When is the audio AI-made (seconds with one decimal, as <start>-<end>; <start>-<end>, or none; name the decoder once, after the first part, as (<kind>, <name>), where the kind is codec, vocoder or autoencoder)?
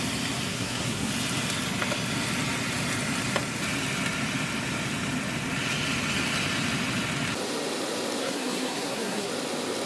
0.5-1.1 (codec, SNAC); 8.2-9.3